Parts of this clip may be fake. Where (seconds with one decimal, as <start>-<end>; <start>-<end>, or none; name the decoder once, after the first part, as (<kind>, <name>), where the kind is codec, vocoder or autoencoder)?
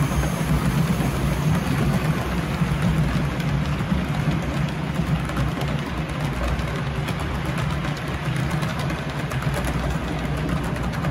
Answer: none